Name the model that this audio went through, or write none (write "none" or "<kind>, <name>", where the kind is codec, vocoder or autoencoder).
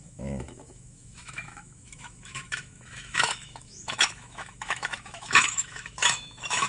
autoencoder, DAC-VAE